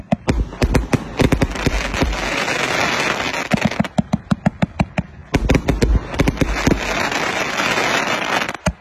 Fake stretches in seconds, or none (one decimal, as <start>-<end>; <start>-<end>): none